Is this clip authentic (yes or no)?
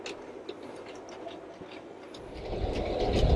yes